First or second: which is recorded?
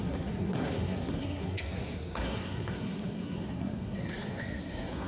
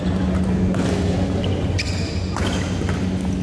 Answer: second